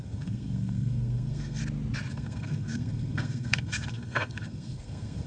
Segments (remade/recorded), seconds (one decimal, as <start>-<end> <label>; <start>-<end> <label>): 0.0-1.6 remade; 1.6-2.1 recorded; 2.1-5.3 remade